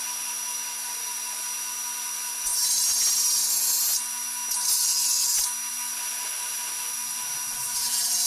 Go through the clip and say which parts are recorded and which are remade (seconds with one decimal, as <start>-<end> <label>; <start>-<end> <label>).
0.0-2.5 remade; 2.5-4.0 recorded; 4.0-4.4 remade; 4.4-5.7 recorded; 5.7-8.3 remade